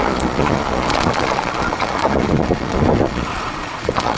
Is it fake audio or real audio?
fake